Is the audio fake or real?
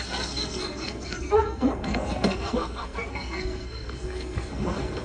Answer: fake